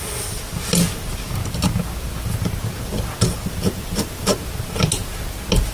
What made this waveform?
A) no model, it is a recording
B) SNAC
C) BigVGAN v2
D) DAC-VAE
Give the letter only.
A